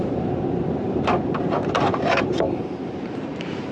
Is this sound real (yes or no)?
no